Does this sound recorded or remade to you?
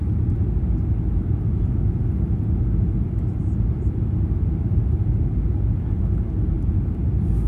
recorded